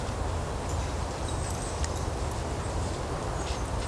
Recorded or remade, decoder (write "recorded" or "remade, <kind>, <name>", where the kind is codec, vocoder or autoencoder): recorded